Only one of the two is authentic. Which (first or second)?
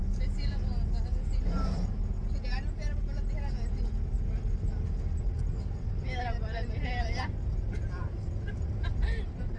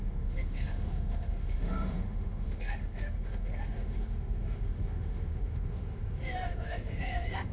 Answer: first